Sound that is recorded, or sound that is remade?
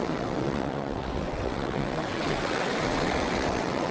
remade